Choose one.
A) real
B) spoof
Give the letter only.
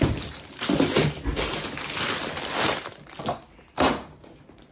A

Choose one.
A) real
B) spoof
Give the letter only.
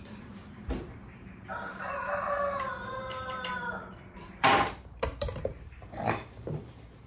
B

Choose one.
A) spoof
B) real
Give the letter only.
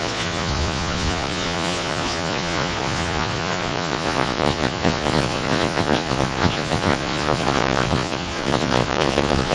A